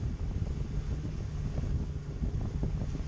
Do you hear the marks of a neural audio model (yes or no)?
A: no